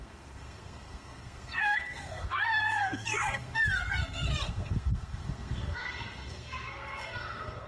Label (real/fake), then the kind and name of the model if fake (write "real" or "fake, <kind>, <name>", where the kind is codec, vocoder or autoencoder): fake, codec, SNAC